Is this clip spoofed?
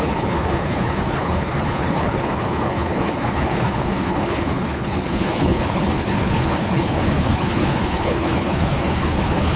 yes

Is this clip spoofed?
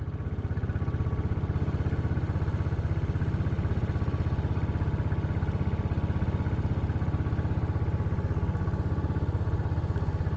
no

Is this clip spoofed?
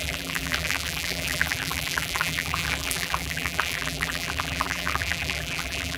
yes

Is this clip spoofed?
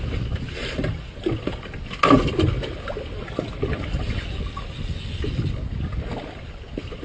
no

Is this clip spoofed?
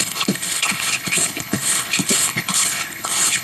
yes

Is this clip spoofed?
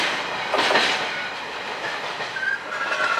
no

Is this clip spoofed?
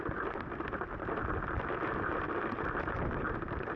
no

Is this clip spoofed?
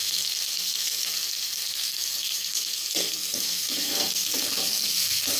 yes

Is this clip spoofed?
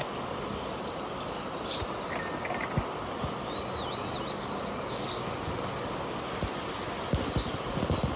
no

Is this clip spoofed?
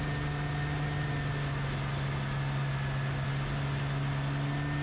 no